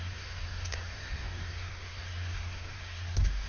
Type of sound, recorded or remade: remade